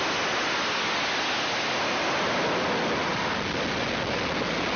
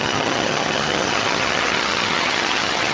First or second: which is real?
first